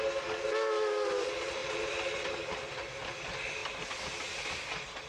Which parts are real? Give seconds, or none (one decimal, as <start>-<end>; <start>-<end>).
0.0-1.6; 2.4-5.1